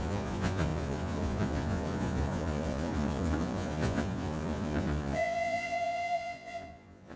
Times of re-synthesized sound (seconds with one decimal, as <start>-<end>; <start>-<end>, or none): 0.0-7.2